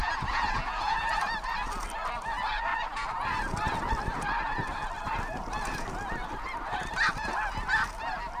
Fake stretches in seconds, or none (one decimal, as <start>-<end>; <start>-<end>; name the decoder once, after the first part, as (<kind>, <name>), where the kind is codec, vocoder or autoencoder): 0.0-1.1 (vocoder, Vocos)